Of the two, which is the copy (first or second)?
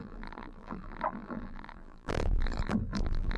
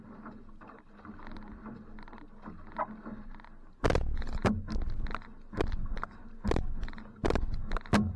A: first